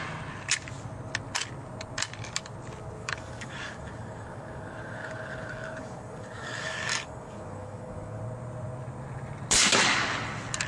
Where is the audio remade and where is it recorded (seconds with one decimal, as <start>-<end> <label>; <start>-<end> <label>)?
0.0-3.0 recorded; 3.0-8.2 remade; 8.2-10.7 recorded